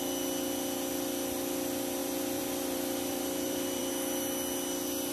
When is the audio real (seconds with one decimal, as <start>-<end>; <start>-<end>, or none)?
0.0-2.0; 3.9-5.1